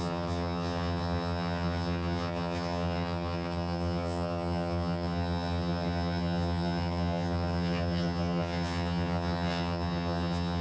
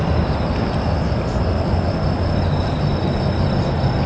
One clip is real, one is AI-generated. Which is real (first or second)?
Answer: second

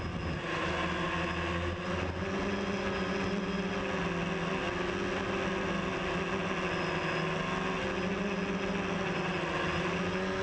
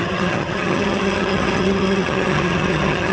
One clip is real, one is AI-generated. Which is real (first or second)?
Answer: first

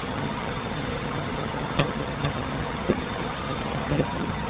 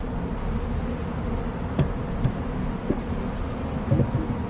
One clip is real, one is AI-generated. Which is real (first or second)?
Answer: second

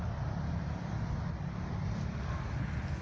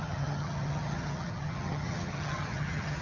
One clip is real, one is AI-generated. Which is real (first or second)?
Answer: first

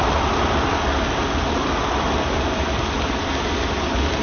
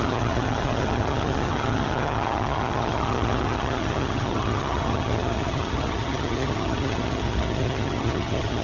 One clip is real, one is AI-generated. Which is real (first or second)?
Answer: first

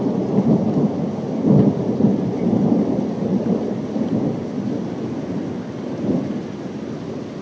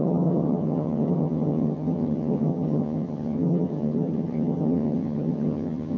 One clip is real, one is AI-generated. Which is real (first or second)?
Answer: first